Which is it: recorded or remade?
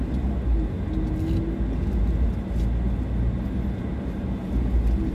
recorded